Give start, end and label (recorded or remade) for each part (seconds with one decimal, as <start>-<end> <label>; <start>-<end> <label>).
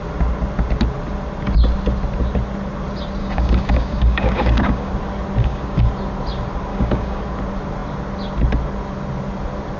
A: 0.0-3.2 recorded; 3.2-4.9 remade; 4.9-5.4 recorded; 5.4-5.9 remade; 5.9-6.7 recorded; 6.7-7.2 remade; 7.2-9.8 recorded